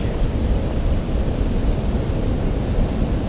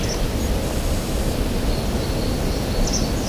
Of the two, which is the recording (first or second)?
second